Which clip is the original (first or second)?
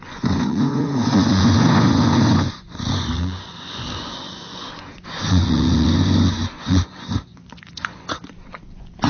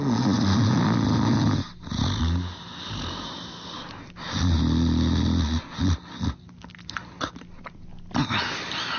second